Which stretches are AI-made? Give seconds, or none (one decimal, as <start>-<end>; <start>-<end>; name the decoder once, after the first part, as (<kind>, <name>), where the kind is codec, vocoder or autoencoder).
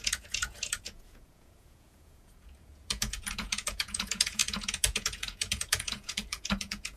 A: 0.0-7.0 (vocoder, Vocos)